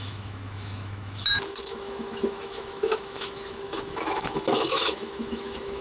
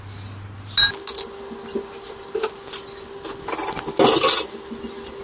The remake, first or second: first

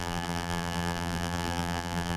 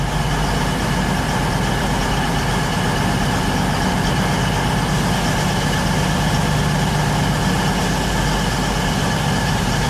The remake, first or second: first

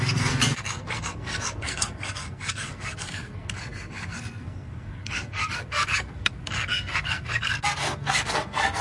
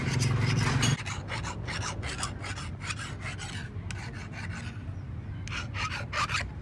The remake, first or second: first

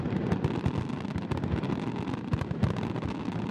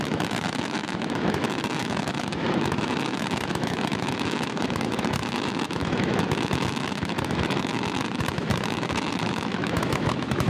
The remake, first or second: second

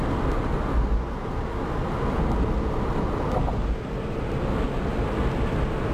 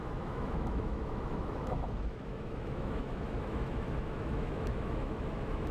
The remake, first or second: second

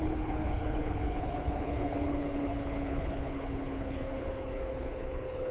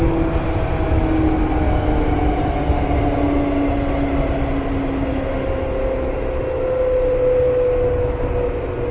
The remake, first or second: first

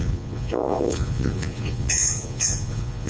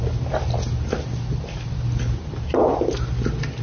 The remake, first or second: first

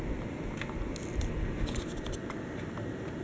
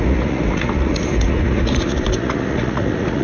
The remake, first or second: second